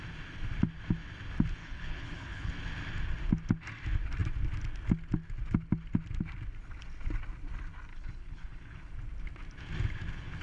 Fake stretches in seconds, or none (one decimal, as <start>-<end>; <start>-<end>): 1.6-2.5; 7.9-8.9